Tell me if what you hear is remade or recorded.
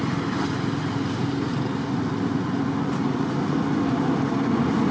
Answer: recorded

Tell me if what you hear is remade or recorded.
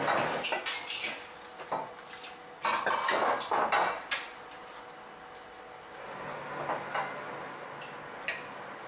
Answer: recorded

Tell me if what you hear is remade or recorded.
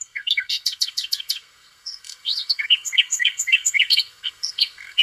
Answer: remade